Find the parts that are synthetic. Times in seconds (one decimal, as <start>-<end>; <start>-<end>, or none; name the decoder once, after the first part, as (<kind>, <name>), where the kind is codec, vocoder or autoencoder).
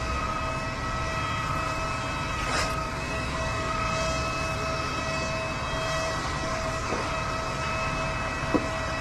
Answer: 2.8-3.8 (codec, DAC); 6.2-7.1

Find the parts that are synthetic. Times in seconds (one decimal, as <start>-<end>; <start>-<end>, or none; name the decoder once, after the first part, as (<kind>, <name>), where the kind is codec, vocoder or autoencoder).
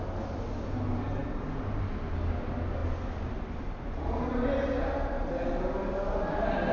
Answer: none